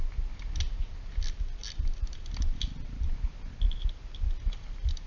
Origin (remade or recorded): recorded